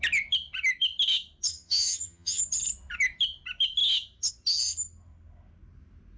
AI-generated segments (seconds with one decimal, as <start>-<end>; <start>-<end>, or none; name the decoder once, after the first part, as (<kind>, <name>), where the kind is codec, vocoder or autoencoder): 1.5-2.4 (vocoder, HiFi-GAN)